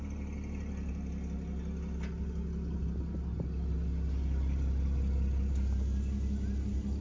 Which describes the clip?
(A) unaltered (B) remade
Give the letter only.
A